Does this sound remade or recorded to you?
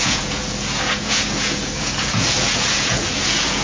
remade